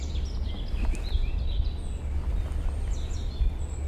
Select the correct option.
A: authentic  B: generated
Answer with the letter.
A